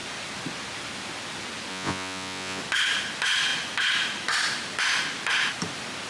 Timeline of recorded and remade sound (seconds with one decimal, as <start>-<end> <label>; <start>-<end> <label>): 0.0-1.7 recorded; 1.7-2.6 remade; 2.6-6.1 recorded